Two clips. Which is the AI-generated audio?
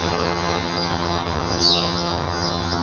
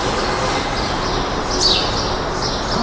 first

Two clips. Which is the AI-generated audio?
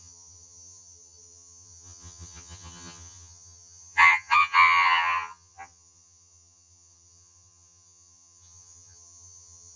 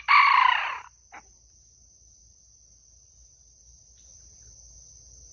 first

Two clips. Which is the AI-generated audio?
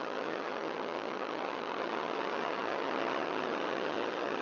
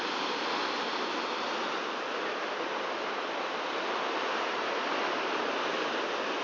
first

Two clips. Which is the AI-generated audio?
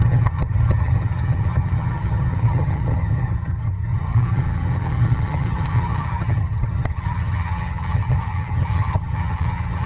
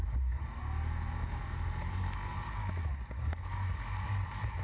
first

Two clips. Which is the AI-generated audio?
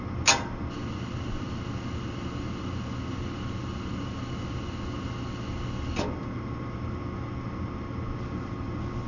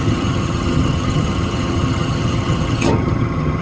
second